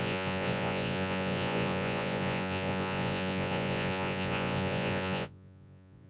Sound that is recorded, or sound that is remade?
remade